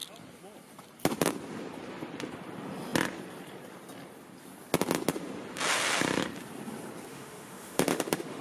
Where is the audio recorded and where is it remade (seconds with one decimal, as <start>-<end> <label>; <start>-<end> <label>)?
0.0-7.1 recorded; 7.1-8.4 remade